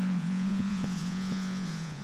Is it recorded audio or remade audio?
remade